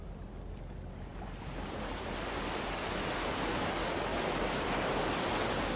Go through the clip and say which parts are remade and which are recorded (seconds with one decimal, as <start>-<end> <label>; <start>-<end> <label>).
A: 0.0-5.8 recorded